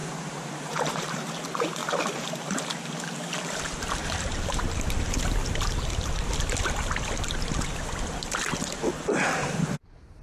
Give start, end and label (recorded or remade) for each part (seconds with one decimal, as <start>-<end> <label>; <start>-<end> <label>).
0.0-1.3 remade; 1.3-4.0 recorded; 4.0-5.1 remade; 5.1-10.2 recorded